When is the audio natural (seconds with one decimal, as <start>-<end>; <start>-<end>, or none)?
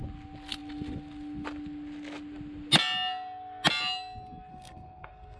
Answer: 0.0-4.5